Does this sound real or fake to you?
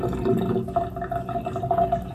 real